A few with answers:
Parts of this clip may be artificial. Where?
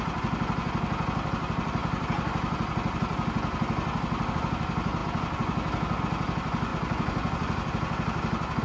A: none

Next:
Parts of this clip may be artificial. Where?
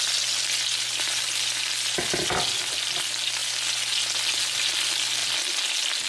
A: none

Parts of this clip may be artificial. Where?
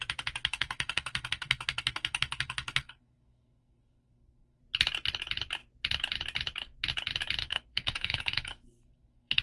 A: 0.4-4.6; 7.4-9.4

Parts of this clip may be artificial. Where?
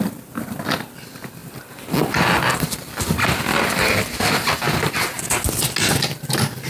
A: 1.4-5.2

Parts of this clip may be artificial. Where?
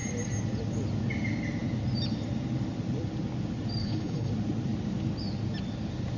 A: 3.8-4.3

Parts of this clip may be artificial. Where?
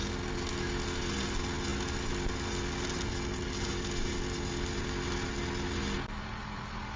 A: none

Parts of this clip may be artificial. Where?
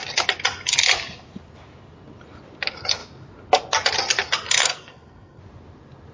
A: 4.6-5.4